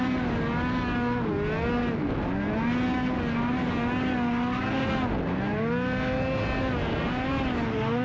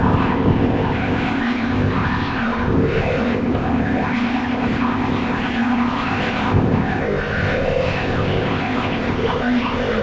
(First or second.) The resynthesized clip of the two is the second